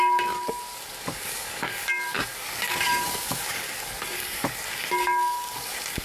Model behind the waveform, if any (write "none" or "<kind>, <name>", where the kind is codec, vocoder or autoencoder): codec, DAC